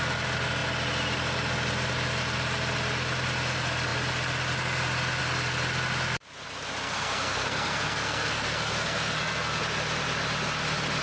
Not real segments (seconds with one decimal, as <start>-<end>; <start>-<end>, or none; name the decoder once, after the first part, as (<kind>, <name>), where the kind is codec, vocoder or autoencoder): 6.8-9.6 (codec, SNAC)